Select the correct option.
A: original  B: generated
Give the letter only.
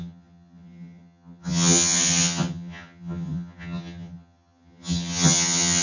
B